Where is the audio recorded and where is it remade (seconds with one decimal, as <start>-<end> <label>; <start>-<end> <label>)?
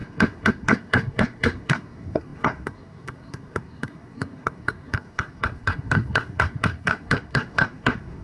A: 0.0-8.2 remade